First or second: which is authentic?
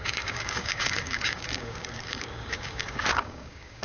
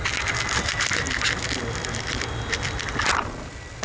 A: second